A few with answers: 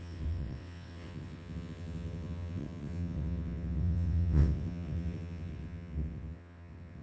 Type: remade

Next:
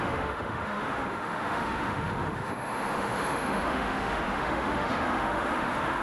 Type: remade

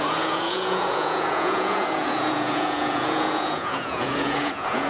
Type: remade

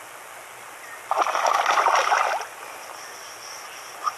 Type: recorded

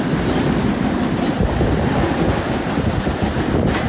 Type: recorded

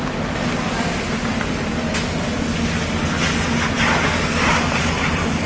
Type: recorded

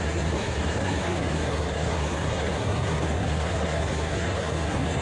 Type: remade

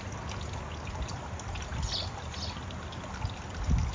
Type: recorded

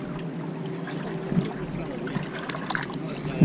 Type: recorded